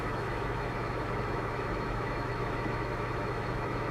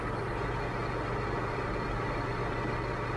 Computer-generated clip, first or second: first